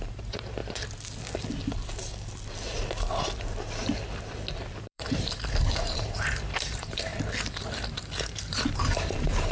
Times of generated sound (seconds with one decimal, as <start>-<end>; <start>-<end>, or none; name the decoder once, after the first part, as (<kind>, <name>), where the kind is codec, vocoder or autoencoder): 0.0-0.6 (vocoder, BigVGAN v2); 4.8-7.1; 8.4-9.5